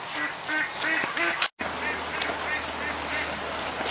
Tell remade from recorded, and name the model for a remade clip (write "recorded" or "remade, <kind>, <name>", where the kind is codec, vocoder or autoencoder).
recorded